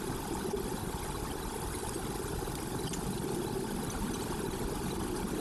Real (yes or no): yes